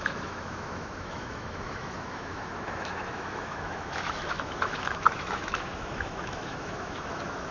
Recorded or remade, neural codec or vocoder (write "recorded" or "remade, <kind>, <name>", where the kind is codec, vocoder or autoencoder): remade, autoencoder, DAC-VAE